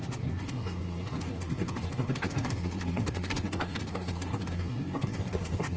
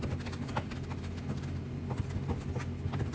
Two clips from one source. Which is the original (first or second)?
second